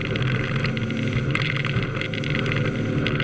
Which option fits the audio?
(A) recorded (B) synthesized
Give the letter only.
A